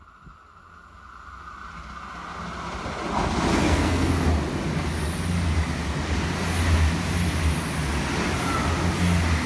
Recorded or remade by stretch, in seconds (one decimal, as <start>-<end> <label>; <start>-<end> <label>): 0.0-3.5 recorded; 3.5-4.1 remade; 4.1-9.5 recorded